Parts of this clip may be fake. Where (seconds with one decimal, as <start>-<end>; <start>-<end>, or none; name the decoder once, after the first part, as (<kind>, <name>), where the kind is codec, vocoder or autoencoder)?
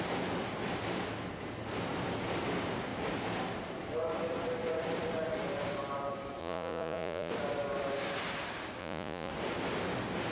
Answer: 6.4-7.3 (vocoder, Vocos); 8.8-9.3